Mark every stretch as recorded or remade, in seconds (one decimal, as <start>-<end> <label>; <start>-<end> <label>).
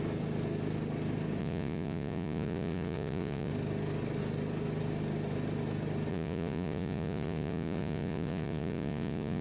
0.0-1.4 recorded; 1.4-3.5 remade; 3.5-6.1 recorded; 6.1-9.4 remade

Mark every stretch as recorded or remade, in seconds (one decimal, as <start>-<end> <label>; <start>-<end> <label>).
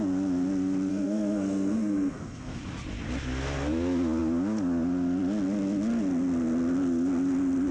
0.0-0.9 recorded; 0.9-2.6 remade; 2.6-7.7 recorded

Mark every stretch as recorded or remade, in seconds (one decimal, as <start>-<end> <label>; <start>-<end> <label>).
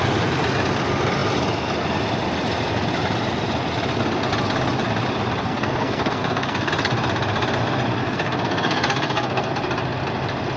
0.0-5.4 recorded; 5.4-6.7 remade; 6.7-8.0 recorded; 8.0-9.5 remade; 9.5-10.6 recorded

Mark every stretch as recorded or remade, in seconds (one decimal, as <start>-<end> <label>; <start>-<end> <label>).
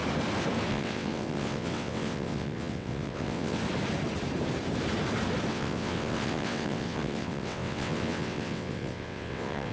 0.0-0.7 recorded; 0.7-3.6 remade; 3.6-5.5 recorded; 5.5-9.7 remade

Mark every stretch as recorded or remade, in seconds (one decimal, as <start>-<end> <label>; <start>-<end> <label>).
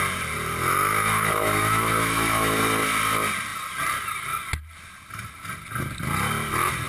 0.0-0.9 recorded; 0.9-2.6 remade; 2.6-6.9 recorded